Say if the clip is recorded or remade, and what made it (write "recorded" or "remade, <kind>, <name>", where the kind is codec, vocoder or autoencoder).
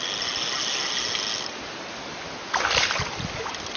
recorded